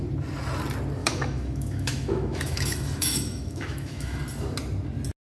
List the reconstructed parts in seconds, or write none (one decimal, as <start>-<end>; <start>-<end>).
1.0-4.2